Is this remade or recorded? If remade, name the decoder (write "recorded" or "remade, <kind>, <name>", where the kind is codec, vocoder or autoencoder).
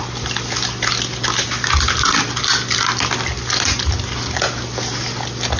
recorded